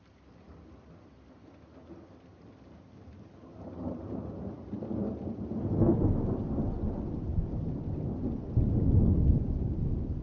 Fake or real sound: real